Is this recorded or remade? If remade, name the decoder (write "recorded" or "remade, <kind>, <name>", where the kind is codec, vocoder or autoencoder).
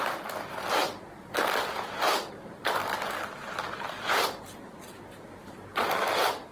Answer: recorded